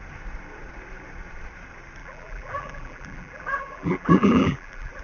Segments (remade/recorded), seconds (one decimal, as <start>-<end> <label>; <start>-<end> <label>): 0.0-2.0 recorded; 2.0-5.0 remade